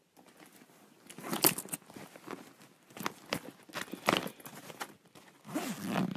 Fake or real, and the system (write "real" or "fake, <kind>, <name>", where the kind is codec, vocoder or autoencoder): real